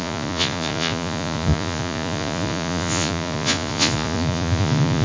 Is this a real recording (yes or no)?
no